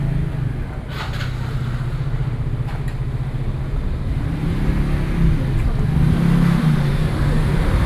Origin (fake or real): real